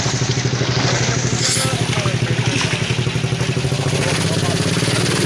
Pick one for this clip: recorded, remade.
recorded